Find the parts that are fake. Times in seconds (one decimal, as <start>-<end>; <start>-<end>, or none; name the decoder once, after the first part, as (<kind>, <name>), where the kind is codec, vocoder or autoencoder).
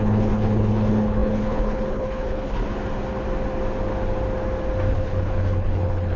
0.0-2.6 (codec, HILCodec); 4.9-6.2